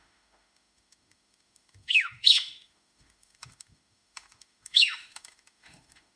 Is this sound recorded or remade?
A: remade